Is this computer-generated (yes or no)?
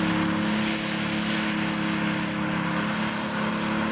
no